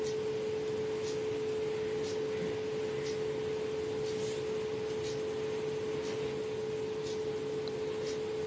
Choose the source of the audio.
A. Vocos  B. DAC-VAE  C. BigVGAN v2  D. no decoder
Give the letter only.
D